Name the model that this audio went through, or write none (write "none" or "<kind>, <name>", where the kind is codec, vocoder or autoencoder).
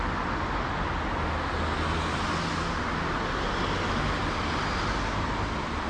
none